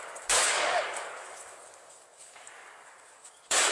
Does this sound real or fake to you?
fake